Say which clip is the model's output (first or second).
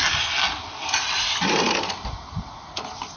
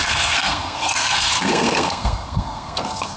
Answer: second